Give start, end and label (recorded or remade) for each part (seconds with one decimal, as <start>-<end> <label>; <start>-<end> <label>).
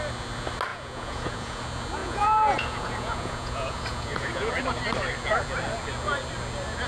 0.0-0.7 recorded; 0.7-1.6 remade; 1.6-2.0 recorded; 2.0-4.5 remade; 4.5-6.9 recorded